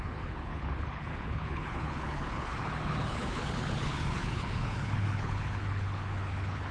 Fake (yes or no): yes